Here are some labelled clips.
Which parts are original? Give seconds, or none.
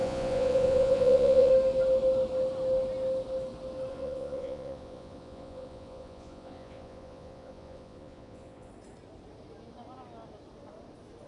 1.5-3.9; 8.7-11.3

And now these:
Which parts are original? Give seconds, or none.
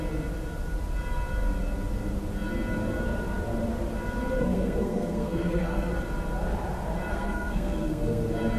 0.0-4.4; 5.9-7.1; 8.2-8.6